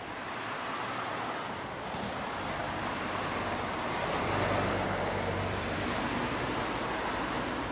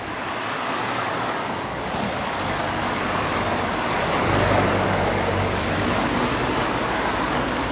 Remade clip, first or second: second